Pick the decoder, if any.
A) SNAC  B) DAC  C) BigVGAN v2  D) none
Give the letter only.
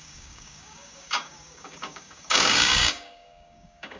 B